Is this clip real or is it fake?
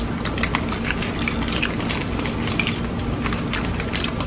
real